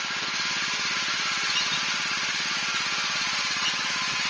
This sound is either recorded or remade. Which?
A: recorded